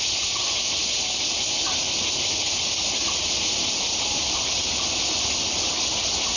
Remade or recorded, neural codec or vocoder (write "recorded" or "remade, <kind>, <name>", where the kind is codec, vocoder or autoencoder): recorded